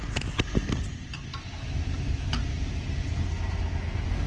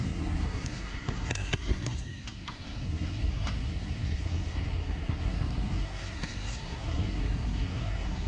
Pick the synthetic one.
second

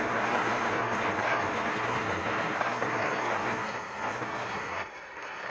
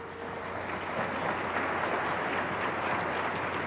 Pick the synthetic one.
first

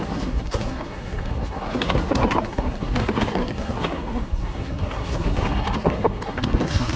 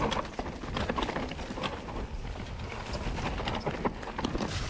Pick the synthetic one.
first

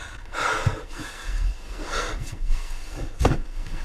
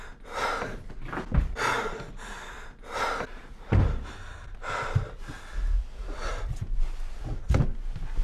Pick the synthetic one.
first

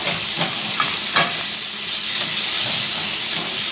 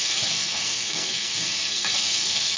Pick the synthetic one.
second